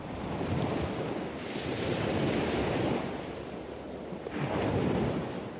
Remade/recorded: recorded